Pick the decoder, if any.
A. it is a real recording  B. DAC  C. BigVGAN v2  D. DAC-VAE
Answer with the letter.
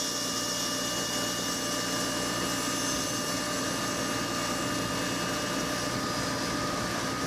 A